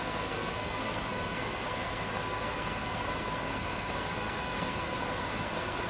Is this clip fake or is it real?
fake